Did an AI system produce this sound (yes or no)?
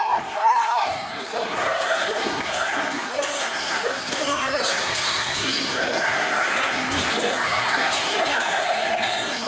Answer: yes